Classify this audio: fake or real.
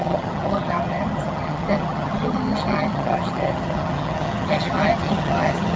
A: fake